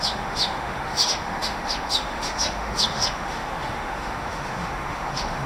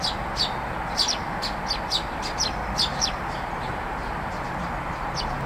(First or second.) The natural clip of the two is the second